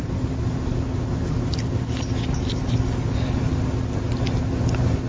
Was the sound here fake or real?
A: real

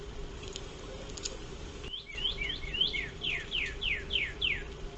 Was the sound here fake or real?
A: fake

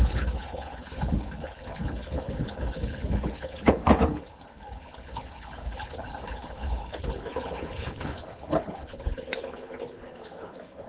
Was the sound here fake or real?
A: fake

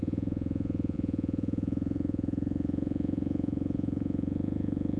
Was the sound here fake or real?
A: fake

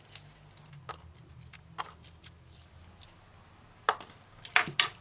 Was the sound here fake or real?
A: real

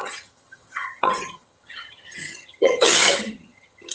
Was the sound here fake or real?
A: fake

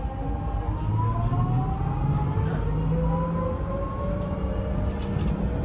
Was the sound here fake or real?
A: real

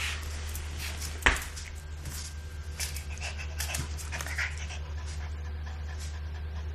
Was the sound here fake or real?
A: real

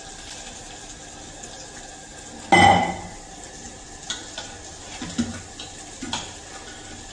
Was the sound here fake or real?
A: real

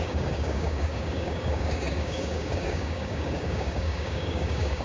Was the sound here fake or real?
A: fake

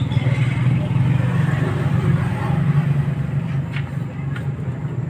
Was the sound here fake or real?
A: real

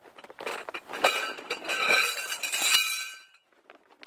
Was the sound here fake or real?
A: real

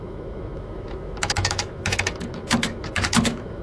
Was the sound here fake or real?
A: fake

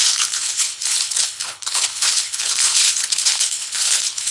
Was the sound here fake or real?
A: fake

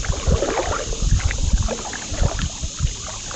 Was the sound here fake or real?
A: real